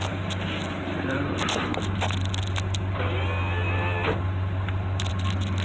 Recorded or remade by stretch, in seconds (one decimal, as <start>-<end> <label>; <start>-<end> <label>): 0.0-5.6 recorded